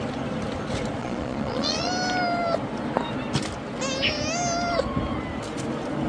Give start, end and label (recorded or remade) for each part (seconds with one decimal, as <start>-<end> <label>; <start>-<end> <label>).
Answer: 0.0-1.0 recorded; 1.0-1.9 remade; 1.9-6.1 recorded